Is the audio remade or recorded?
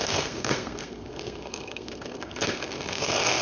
remade